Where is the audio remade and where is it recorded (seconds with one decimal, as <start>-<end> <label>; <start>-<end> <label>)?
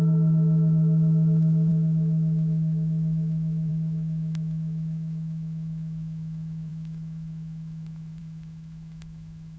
0.0-9.6 remade